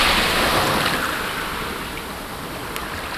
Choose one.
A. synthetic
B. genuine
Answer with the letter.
B